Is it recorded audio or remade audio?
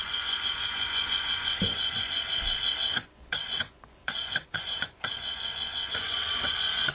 remade